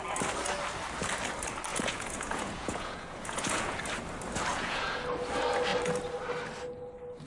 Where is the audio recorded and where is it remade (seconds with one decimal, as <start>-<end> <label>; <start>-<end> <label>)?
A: 0.0-1.7 recorded; 1.7-3.8 remade; 3.8-4.5 recorded; 4.5-5.0 remade; 5.0-7.3 recorded